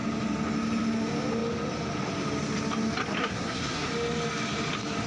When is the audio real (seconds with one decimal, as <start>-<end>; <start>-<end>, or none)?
0.0-3.2; 3.9-5.1